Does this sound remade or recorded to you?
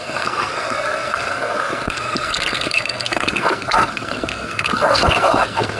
remade